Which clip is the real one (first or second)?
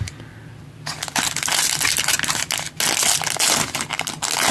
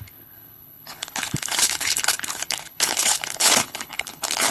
first